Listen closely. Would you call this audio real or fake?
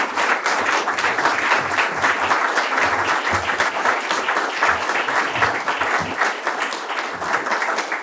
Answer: real